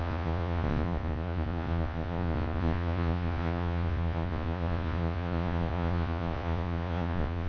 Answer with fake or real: fake